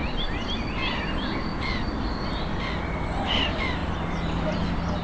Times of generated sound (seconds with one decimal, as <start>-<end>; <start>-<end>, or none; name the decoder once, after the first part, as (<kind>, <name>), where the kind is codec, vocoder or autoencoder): none